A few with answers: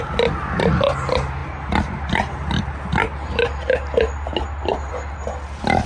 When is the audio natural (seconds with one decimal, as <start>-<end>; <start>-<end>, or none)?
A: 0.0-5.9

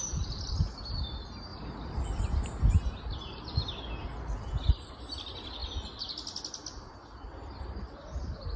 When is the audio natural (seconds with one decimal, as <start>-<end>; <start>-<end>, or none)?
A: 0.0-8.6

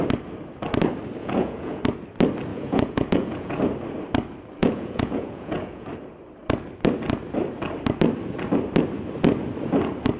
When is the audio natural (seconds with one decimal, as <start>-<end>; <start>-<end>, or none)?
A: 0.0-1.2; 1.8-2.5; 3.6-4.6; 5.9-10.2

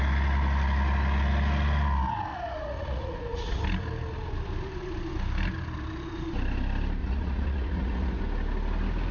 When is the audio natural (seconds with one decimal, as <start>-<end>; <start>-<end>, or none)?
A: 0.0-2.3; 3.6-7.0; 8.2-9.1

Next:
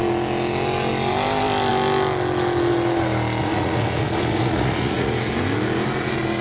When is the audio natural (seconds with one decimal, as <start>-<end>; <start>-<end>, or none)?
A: 0.0-3.4; 5.1-6.4